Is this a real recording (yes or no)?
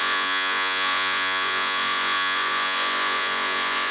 no